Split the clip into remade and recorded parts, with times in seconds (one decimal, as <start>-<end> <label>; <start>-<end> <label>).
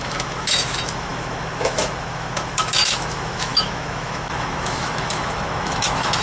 0.0-6.2 remade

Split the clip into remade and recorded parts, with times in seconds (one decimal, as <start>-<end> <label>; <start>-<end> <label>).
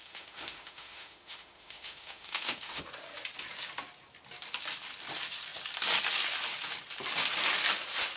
0.0-2.8 remade; 2.8-8.2 recorded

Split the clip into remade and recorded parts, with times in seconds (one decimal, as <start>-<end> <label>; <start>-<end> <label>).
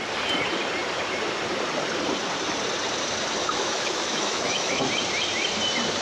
0.0-3.4 recorded; 3.4-4.8 remade; 4.8-6.0 recorded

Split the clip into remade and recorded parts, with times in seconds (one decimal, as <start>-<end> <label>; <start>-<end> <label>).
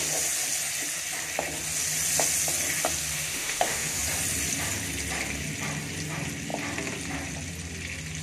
0.0-3.3 recorded; 3.3-4.0 remade; 4.0-8.2 recorded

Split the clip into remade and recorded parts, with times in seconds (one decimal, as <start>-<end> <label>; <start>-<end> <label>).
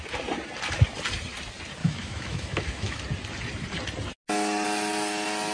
0.0-1.8 recorded; 1.8-3.0 remade; 3.0-5.5 recorded